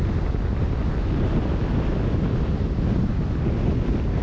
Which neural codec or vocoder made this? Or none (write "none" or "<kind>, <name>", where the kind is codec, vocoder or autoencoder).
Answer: none